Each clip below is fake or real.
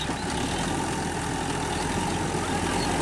real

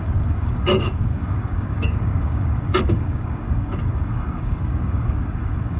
fake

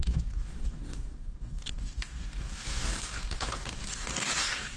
fake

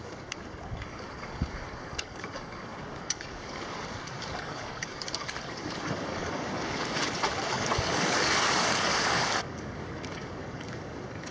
fake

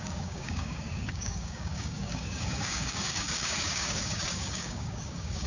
fake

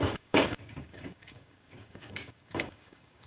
fake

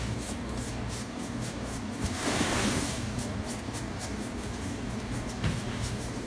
fake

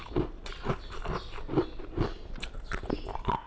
real